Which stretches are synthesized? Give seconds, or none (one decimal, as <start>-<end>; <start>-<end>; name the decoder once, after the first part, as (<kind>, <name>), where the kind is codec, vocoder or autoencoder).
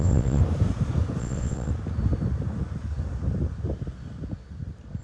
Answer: 0.0-0.4 (vocoder, WaveNeXt); 1.2-1.7